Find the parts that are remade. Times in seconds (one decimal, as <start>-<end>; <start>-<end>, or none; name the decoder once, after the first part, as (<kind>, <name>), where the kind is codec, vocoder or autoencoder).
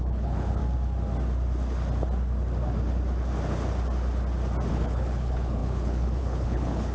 0.0-0.6 (codec, HILCodec); 4.7-6.9